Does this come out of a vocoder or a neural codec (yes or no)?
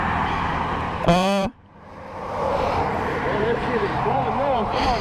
yes